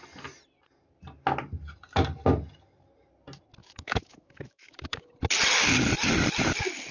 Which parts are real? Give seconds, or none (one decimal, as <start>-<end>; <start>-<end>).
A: 0.0-3.6; 5.1-6.9